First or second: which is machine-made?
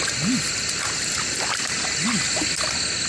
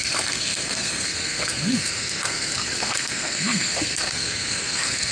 second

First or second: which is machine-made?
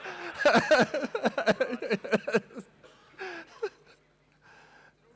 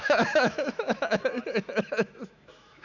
second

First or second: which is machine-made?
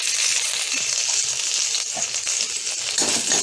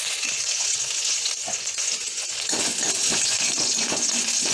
second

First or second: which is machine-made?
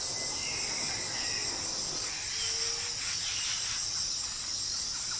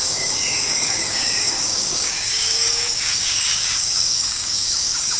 second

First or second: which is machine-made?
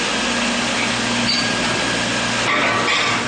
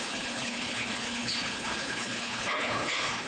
second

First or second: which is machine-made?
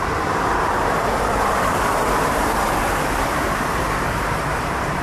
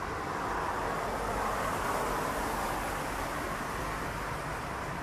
first